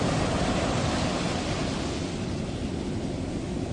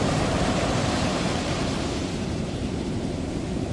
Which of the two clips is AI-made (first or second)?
second